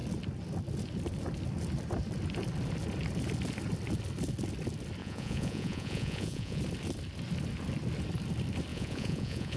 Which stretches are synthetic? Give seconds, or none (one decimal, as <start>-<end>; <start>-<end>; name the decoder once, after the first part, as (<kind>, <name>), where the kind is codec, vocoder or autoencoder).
5.0-6.6 (vocoder, Vocos); 8.7-9.6